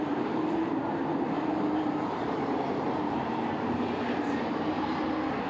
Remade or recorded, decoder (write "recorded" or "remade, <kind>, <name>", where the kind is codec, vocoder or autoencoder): remade, vocoder, BigVGAN v2